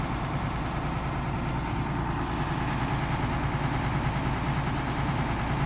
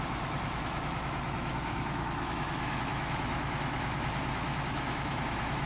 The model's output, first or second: second